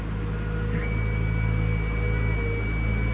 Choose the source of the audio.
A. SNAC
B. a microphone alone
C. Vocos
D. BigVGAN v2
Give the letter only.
B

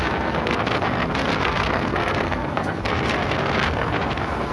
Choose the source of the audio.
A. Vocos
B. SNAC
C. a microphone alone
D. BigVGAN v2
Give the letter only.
B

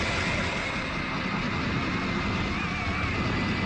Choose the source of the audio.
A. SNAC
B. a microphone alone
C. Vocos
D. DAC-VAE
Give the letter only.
B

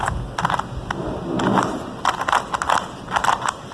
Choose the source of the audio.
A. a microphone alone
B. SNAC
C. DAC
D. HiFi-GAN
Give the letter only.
A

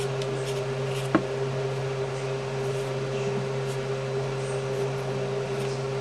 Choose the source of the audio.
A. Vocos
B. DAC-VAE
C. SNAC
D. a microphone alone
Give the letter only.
D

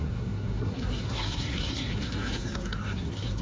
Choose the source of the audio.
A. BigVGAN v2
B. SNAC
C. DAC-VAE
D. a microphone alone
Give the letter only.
B